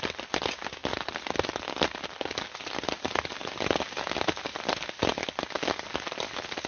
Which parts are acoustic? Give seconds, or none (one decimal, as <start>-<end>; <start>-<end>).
0.0-6.7